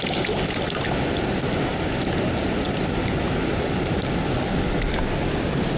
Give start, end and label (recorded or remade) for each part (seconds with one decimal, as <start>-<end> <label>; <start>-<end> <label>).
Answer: 0.0-5.8 recorded

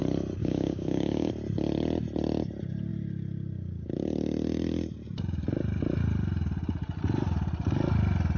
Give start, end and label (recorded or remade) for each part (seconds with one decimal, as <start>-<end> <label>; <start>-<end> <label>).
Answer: 0.0-0.4 recorded; 0.4-1.3 remade; 1.3-8.4 recorded